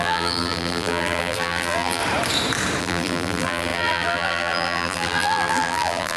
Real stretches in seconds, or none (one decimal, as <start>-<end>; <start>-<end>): 2.0-2.8